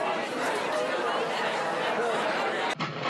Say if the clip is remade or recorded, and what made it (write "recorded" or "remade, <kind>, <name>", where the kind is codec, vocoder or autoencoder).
recorded